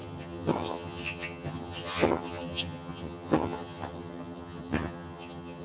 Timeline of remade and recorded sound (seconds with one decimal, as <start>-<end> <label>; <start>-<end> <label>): 0.0-5.6 remade